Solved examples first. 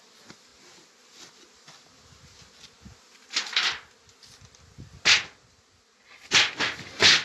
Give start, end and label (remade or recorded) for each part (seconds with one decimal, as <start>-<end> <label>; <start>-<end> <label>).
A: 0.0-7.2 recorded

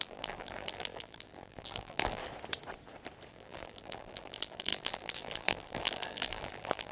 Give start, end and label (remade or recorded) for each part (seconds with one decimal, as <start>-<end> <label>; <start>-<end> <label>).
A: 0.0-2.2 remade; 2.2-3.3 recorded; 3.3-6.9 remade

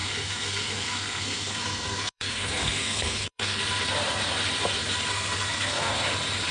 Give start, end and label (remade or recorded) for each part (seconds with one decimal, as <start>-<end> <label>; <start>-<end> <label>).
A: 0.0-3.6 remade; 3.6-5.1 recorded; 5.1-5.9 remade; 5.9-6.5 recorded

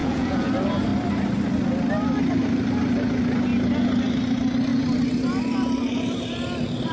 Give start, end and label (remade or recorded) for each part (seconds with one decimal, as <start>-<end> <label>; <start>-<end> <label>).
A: 0.0-0.5 remade; 0.5-6.9 recorded

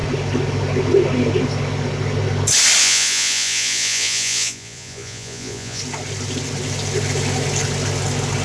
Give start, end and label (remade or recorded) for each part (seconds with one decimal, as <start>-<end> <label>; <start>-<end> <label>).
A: 0.0-2.8 recorded; 2.8-5.8 remade; 5.8-8.4 recorded

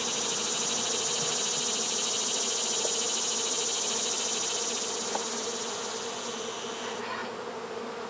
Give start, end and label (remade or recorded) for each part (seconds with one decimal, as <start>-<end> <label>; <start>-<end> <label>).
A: 0.0-8.1 recorded